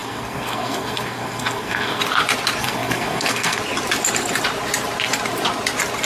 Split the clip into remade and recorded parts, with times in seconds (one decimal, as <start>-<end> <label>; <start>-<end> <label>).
0.0-2.0 remade; 2.0-2.6 recorded; 2.6-3.6 remade; 3.6-6.0 recorded